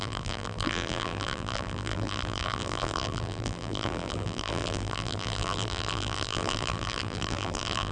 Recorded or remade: remade